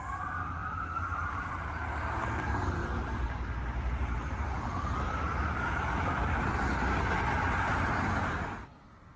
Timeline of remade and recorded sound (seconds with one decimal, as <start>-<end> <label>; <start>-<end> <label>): 0.0-0.6 recorded; 0.6-1.5 remade; 1.5-9.2 recorded

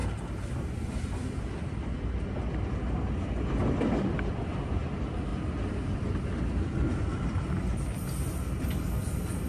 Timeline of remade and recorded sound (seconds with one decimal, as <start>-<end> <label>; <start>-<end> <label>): 0.0-2.0 remade; 2.0-6.9 recorded; 6.9-8.0 remade; 8.0-9.5 recorded

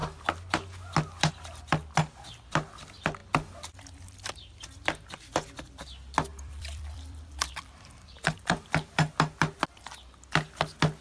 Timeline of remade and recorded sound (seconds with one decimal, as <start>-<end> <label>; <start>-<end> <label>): 0.0-6.3 recorded; 6.3-9.1 remade; 9.1-11.0 recorded

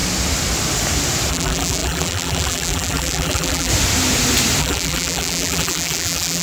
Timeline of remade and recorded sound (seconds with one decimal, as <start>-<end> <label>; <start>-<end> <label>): 0.0-1.3 recorded; 1.3-3.7 remade; 3.7-4.6 recorded; 4.6-6.4 remade

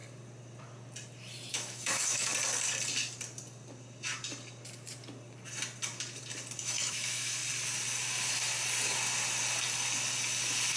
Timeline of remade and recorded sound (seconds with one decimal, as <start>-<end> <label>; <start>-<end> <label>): 0.0-1.5 recorded; 1.5-2.3 remade; 2.3-6.6 recorded; 6.6-7.4 remade; 7.4-10.8 recorded

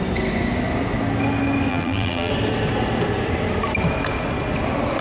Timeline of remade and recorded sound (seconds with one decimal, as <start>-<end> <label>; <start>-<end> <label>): 0.0-1.7 recorded; 1.7-2.3 remade; 2.3-5.0 recorded